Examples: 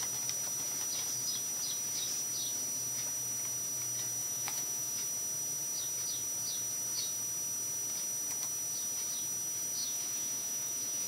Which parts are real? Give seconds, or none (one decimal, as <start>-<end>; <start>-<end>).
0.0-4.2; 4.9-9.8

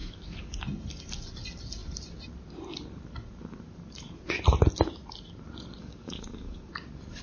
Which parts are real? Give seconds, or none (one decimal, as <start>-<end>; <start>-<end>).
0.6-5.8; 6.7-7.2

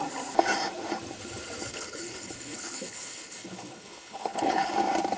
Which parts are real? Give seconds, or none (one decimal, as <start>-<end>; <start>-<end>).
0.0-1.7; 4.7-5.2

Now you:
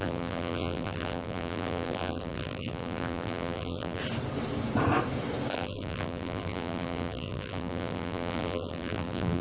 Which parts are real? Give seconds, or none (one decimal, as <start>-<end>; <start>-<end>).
4.0-5.5

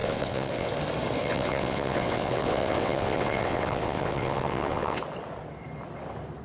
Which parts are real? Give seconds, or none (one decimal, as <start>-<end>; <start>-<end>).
0.7-1.2; 5.0-6.4

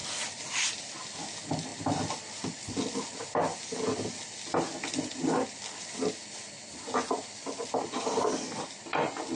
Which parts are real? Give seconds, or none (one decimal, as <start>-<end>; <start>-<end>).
0.0-9.3